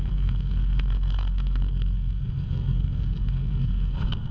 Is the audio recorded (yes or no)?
no